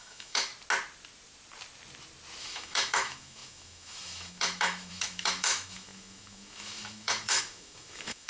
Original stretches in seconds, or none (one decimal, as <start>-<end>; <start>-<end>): 0.5-2.4